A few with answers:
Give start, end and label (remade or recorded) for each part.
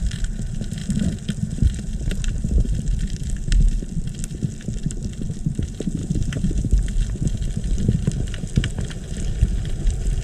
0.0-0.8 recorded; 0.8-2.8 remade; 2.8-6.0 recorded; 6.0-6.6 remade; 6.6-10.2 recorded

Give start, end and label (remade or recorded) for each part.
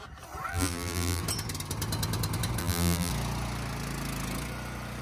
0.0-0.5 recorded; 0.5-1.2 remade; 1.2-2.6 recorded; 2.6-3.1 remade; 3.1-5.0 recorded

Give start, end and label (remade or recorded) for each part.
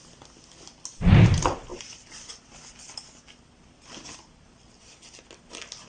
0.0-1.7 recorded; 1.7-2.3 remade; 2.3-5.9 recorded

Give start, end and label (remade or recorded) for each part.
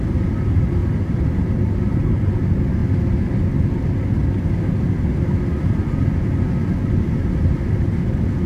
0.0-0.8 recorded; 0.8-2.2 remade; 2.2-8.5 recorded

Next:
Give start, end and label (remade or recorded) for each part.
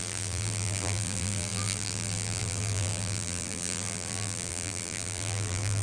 0.0-5.8 remade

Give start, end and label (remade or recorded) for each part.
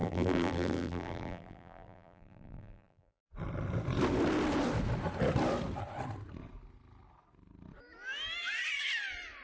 0.0-3.2 remade; 3.2-9.4 recorded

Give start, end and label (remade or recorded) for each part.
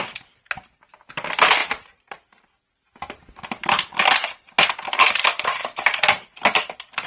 0.0-1.6 recorded; 1.6-4.0 remade; 4.0-7.1 recorded